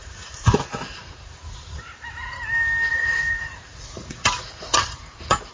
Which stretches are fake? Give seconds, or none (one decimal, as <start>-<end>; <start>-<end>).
0.0-1.8; 2.9-5.5